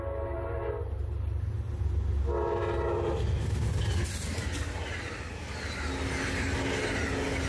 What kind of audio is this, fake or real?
real